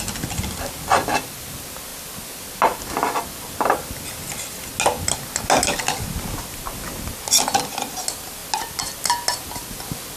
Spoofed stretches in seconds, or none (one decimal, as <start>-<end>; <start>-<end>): none